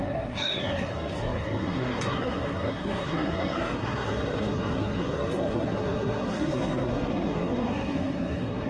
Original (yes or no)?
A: no